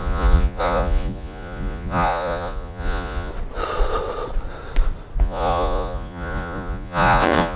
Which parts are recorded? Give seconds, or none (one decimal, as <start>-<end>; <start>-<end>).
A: 3.3-5.2